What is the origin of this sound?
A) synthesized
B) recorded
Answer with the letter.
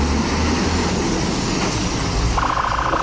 B